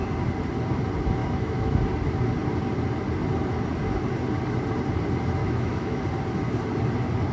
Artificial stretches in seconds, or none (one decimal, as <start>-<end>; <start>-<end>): 1.2-1.8; 5.4-6.0